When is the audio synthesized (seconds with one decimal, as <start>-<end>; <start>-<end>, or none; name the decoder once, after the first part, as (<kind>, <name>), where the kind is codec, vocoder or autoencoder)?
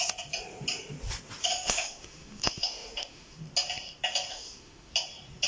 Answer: 1.4-3.4 (autoencoder, DAC-VAE); 4.3-4.9